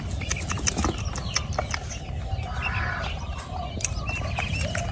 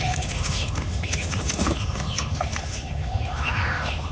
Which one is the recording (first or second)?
first